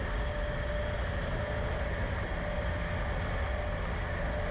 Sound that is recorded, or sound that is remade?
recorded